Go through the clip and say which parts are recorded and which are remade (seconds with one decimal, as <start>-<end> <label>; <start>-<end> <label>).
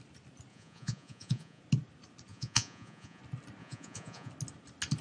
0.0-0.5 recorded; 0.5-1.6 remade; 1.6-2.3 recorded; 2.3-3.2 remade; 3.2-3.6 recorded; 3.6-4.3 remade; 4.3-5.0 recorded